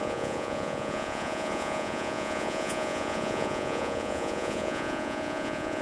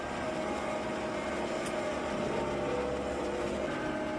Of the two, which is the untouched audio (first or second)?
second